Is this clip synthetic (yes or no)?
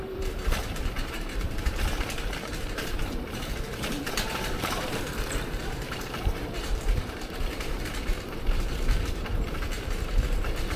yes